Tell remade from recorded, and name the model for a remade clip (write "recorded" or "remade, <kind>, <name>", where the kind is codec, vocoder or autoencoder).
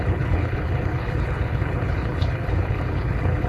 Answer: remade, codec, HILCodec